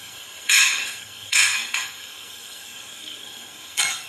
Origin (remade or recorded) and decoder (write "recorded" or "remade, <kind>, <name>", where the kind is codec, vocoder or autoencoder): remade, codec, SNAC